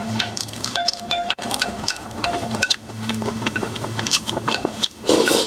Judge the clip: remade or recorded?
remade